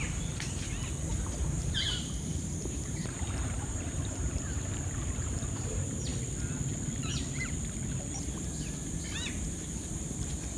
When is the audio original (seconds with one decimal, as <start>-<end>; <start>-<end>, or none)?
6.1-10.2